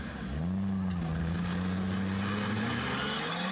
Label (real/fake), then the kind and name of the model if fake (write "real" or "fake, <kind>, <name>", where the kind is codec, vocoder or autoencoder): real